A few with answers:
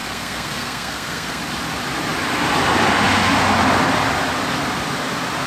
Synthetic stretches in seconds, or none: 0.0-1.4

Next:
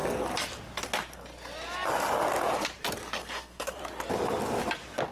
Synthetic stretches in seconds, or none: 3.2-3.8

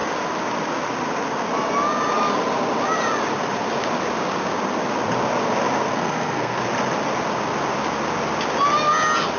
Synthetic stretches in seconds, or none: 5.8-6.6

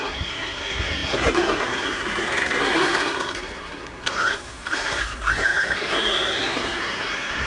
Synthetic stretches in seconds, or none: 0.0-7.5

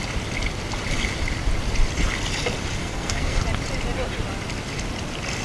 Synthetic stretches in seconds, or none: 2.8-3.4

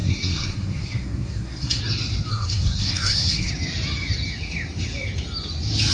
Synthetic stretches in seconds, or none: 0.0-1.8; 2.3-3.5

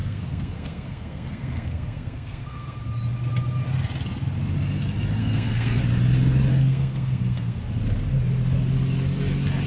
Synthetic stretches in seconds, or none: 0.0-2.8; 5.2-5.8; 6.5-7.6